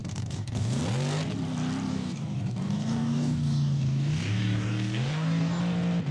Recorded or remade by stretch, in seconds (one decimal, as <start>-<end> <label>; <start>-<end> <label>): 0.0-0.8 remade; 0.8-1.9 recorded; 1.9-5.6 remade; 5.6-6.1 recorded